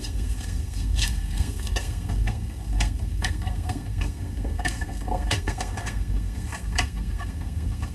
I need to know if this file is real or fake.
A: fake